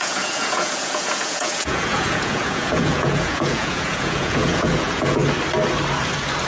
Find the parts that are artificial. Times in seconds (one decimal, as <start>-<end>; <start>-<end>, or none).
0.0-5.2